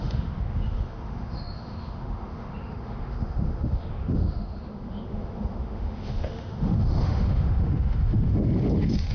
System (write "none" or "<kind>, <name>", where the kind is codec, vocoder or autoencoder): autoencoder, DAC-VAE